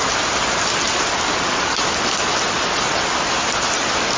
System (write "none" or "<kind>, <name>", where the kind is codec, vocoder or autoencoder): none